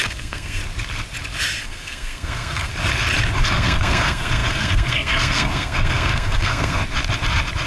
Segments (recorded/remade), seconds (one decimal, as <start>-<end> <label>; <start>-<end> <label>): 0.0-0.6 remade; 0.6-1.6 recorded; 1.6-2.7 remade; 2.7-3.4 recorded; 3.4-6.8 remade; 6.8-7.7 recorded